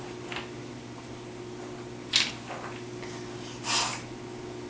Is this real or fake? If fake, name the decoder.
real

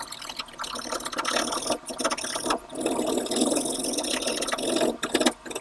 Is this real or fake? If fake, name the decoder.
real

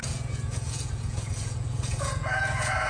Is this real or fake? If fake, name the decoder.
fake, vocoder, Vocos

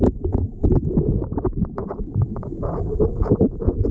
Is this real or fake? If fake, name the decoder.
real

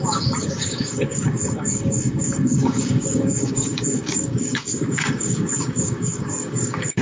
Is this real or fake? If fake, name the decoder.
fake, codec, DAC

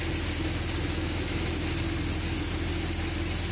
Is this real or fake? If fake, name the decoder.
real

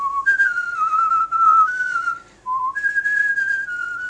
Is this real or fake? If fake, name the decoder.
fake, vocoder, BigVGAN v2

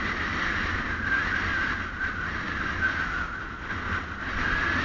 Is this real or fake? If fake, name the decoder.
real